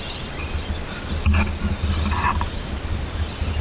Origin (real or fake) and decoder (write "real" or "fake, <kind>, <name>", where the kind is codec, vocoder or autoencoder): real